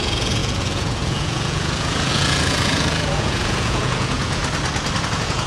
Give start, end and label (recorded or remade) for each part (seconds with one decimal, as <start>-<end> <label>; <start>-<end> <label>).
0.0-4.4 remade; 4.4-5.0 recorded; 5.0-5.5 remade

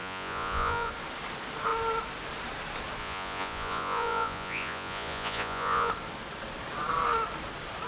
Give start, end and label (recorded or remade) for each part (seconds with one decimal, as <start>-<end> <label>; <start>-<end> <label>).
0.0-0.9 remade; 0.9-3.0 recorded; 3.0-5.9 remade; 5.9-7.9 recorded

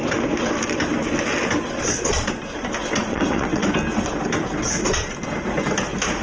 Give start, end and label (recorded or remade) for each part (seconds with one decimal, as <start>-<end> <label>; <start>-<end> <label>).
0.0-3.1 recorded; 3.1-3.7 remade; 3.7-6.2 recorded

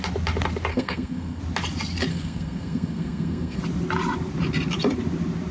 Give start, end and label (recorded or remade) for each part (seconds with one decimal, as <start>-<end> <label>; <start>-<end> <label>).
0.0-0.7 recorded; 0.7-1.4 remade; 1.4-2.1 recorded; 2.1-3.6 remade; 3.6-5.5 recorded

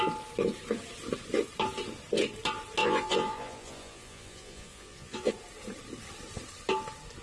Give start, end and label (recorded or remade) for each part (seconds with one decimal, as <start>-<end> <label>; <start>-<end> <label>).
0.0-2.8 recorded; 2.8-5.3 remade; 5.3-7.2 recorded

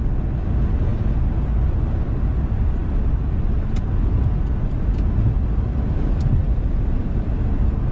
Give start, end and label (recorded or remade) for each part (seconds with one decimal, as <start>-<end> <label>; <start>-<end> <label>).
0.0-7.9 recorded

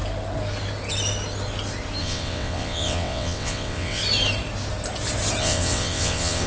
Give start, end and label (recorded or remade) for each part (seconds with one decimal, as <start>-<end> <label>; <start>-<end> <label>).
0.0-2.0 recorded; 2.0-4.0 remade; 4.0-5.4 recorded; 5.4-6.5 remade

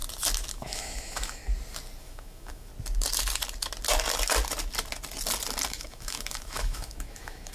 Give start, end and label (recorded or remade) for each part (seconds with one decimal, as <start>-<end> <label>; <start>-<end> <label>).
0.0-0.5 recorded; 0.5-1.4 remade; 1.4-2.0 recorded; 2.0-2.7 remade; 2.7-5.7 recorded; 5.7-7.5 remade